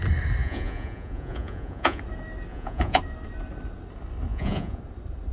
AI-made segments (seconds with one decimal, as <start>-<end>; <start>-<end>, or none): 0.4-2.0; 2.5-3.0; 4.3-4.8